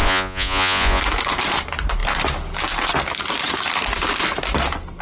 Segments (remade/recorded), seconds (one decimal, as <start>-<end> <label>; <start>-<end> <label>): 0.0-1.0 remade; 1.0-5.0 recorded